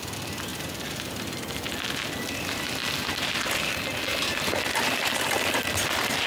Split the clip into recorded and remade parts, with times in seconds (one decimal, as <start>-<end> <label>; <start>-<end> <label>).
0.0-0.5 recorded; 0.5-1.5 remade; 1.5-4.1 recorded; 4.1-5.6 remade; 5.6-6.3 recorded